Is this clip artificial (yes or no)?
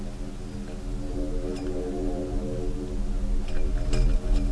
no